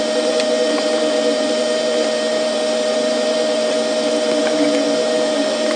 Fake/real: fake